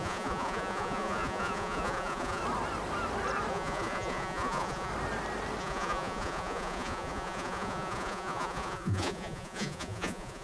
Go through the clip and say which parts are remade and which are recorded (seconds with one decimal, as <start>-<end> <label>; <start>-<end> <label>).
0.0-2.4 remade; 2.4-3.5 recorded; 3.5-4.9 remade; 4.9-5.6 recorded; 5.6-10.4 remade